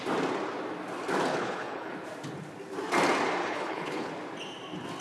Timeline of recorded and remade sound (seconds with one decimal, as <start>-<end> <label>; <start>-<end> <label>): 0.0-1.3 recorded; 1.3-1.9 remade; 1.9-3.4 recorded; 3.4-4.1 remade; 4.1-5.0 recorded